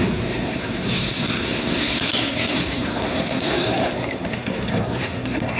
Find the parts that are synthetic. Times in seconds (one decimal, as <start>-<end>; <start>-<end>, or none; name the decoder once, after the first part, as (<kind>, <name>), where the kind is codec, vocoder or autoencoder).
0.0-5.6 (codec, SNAC)